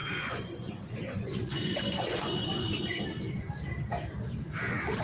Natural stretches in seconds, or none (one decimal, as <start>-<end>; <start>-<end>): 3.0-5.0